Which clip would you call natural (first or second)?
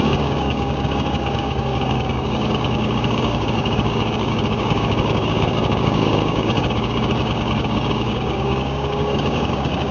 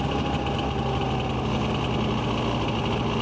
second